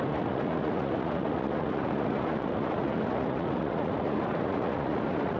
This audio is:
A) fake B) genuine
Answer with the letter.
A